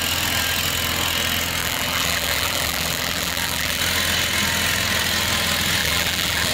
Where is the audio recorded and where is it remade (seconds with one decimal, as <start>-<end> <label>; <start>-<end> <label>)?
0.0-1.6 recorded; 1.6-3.8 remade; 3.8-5.8 recorded; 5.8-6.5 remade